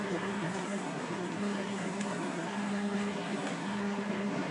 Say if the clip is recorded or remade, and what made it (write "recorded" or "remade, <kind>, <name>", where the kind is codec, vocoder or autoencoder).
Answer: remade, codec, SNAC